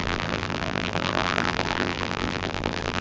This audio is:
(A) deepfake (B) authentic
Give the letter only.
A